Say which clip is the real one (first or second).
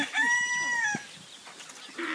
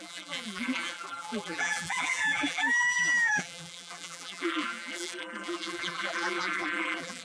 first